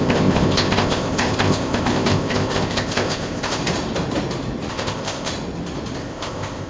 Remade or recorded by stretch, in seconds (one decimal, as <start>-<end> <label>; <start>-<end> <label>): 0.0-3.6 remade; 3.6-4.7 recorded; 4.7-5.3 remade; 5.3-6.0 recorded; 6.0-6.7 remade

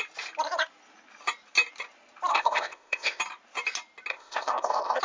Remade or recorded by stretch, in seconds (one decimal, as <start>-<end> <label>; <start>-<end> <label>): 0.0-2.3 recorded; 2.3-3.2 remade; 3.2-4.1 recorded; 4.1-5.0 remade

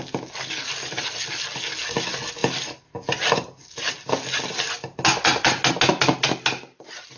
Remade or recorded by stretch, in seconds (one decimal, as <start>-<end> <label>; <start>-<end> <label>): 0.0-7.2 recorded